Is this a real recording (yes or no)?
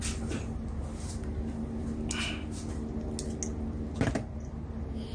yes